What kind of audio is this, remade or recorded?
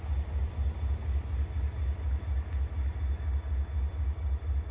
recorded